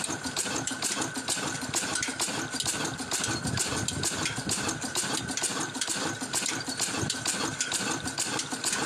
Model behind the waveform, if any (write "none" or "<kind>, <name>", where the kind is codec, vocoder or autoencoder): vocoder, BigVGAN v2